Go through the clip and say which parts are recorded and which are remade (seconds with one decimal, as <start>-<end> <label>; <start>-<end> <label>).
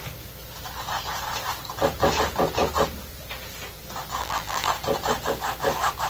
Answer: 0.0-4.2 recorded; 4.2-4.7 remade; 4.7-6.1 recorded